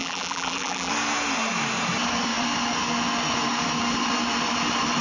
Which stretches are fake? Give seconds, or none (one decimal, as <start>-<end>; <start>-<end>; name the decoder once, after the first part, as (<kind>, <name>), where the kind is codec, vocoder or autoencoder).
0.0-0.9 (vocoder, BigVGAN v2)